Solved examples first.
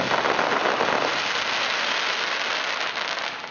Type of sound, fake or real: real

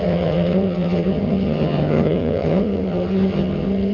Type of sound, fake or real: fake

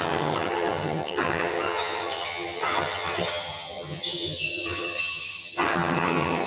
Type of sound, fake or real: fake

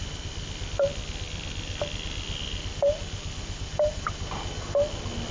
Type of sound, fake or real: real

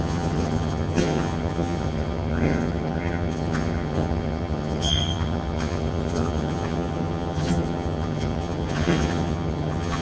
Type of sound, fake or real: fake